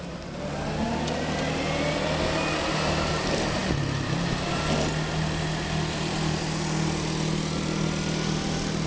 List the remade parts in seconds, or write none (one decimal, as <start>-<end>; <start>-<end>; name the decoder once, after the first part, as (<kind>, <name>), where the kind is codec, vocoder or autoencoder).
none